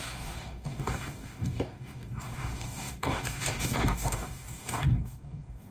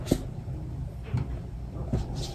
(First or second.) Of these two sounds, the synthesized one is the first